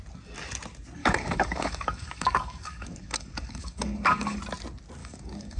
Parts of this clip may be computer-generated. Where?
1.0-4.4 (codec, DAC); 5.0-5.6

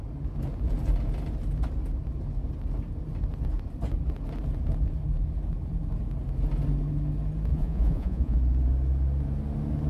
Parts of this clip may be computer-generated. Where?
7.5-8.4 (vocoder, Vocos)

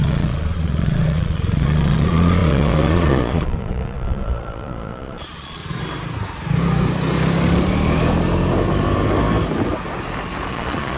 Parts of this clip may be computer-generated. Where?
0.0-5.6 (vocoder, Vocos); 10.5-11.0